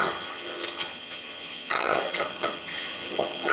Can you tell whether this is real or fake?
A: fake